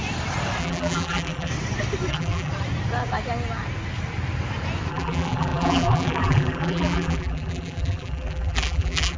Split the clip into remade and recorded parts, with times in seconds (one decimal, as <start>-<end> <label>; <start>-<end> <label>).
0.0-0.6 recorded; 0.6-1.5 remade; 1.5-2.1 recorded; 2.1-2.5 remade; 2.5-4.9 recorded; 4.9-9.2 remade